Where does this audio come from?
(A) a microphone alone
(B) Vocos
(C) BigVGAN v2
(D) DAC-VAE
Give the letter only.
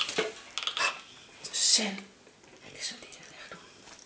A